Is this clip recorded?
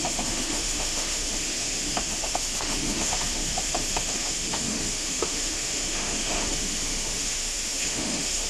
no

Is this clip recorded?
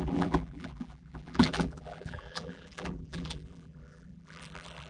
no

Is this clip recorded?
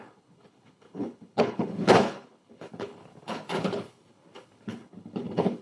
no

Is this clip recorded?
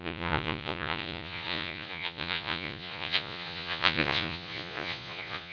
no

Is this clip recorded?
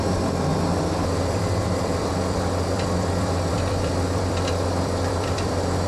no